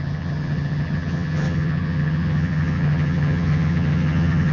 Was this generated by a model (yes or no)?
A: yes